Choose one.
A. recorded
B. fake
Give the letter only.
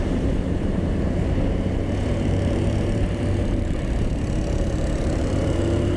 B